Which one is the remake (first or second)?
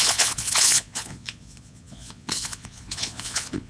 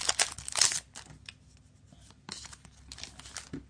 first